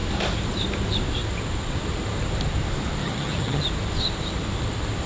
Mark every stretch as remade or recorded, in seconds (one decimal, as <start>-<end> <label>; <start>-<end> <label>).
0.0-3.0 recorded; 3.0-3.6 remade; 3.6-5.1 recorded